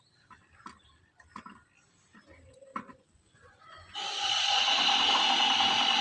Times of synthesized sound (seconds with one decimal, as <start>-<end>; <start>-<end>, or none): 2.7-4.7